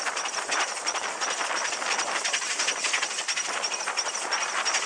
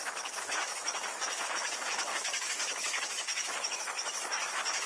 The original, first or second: first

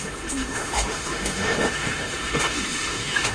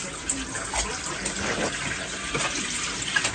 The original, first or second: second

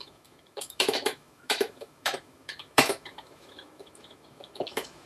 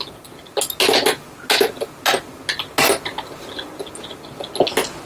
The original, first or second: second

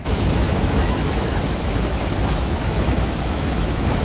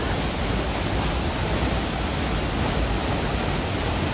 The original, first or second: second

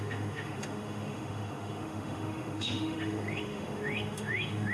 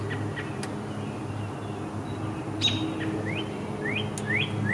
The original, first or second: second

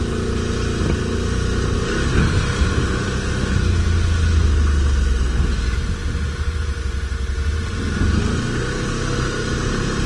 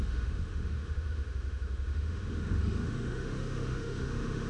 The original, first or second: first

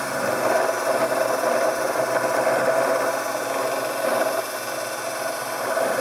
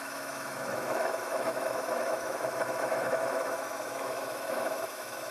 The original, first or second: first